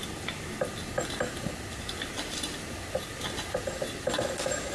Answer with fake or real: real